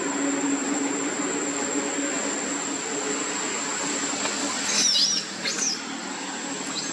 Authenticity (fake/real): real